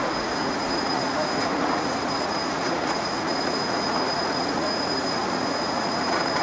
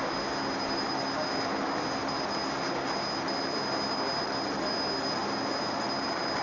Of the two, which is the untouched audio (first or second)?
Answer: second